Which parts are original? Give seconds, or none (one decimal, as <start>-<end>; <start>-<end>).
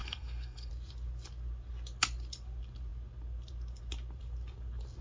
0.7-5.0